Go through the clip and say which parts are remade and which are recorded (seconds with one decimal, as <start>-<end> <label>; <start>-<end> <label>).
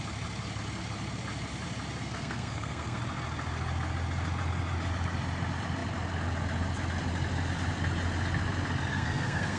0.0-2.0 recorded; 2.0-3.0 remade; 3.0-8.9 recorded; 8.9-9.6 remade